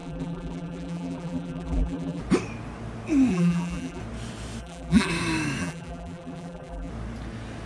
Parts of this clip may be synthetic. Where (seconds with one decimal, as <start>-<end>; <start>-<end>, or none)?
0.0-2.2; 3.3-4.0; 4.6-5.1; 5.6-6.9